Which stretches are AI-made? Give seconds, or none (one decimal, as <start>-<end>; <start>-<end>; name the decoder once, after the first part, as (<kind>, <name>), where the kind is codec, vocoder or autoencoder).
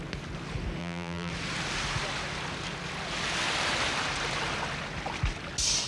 0.8-1.3 (vocoder, BigVGAN v2)